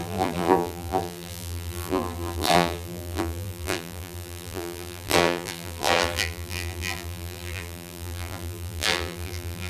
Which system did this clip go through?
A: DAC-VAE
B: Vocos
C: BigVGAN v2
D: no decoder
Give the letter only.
C